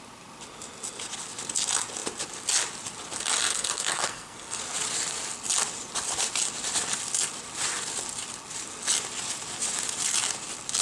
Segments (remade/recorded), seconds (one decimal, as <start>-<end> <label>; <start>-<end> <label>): 0.0-3.5 recorded; 3.5-4.6 remade; 4.6-10.8 recorded